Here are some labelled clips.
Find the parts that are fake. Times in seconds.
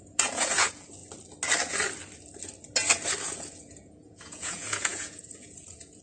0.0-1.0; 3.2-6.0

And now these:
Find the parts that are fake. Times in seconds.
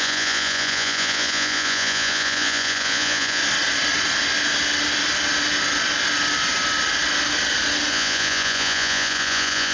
0.0-3.4; 7.9-9.7